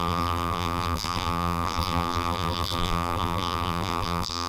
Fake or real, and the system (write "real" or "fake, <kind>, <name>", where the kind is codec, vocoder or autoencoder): fake, vocoder, BigVGAN v2